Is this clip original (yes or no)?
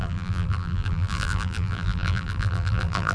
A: no